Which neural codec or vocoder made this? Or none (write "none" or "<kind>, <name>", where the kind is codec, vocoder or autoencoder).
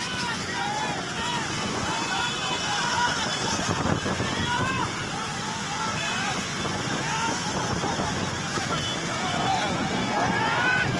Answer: vocoder, Vocos